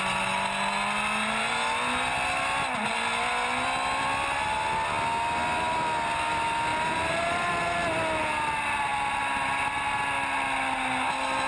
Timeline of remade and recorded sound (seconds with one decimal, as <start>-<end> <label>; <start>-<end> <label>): 0.0-6.7 recorded; 6.7-7.5 remade; 7.5-11.5 recorded